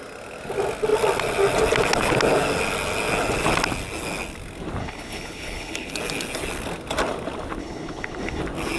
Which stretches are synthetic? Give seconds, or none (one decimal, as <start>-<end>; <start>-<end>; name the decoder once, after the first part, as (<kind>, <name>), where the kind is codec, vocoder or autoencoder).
4.8-5.9 (codec, HILCodec); 7.6-8.4